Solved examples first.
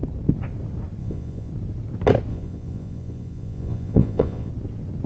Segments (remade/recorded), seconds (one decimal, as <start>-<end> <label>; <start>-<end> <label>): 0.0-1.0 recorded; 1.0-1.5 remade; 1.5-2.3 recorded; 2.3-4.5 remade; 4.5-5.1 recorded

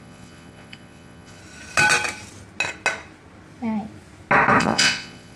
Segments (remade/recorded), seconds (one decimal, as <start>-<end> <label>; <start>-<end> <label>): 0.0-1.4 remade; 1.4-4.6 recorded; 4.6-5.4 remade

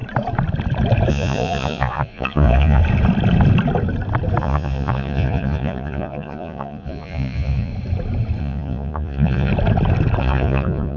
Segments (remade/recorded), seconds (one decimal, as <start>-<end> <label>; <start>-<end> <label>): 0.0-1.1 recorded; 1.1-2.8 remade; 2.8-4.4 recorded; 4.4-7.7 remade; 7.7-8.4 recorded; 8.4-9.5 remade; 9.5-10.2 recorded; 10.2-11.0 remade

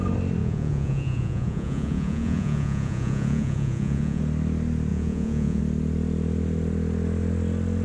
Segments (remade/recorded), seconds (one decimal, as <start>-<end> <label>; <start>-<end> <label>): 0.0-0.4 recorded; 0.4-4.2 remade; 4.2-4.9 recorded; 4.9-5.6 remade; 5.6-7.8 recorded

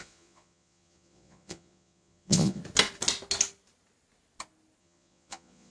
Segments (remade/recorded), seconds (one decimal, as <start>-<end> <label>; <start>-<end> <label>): 0.0-2.6 remade; 2.6-4.8 recorded; 4.8-5.7 remade

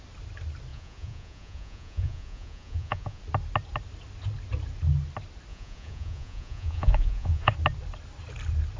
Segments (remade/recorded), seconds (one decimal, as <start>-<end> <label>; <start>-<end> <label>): 0.0-0.7 recorded; 0.7-3.2 remade; 3.2-5.5 recorded; 5.5-7.5 remade; 7.5-8.8 recorded

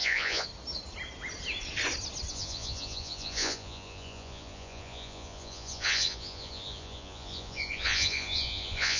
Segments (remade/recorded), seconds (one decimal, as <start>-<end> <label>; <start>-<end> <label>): 0.0-0.5 remade; 0.5-2.3 recorded; 2.3-9.0 remade

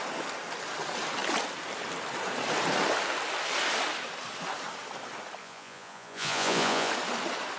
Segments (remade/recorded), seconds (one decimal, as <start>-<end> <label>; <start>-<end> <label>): 0.0-5.4 recorded; 5.4-6.9 remade; 6.9-7.6 recorded